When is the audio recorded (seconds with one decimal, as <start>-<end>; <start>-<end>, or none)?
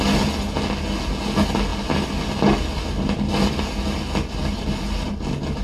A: 0.0-5.6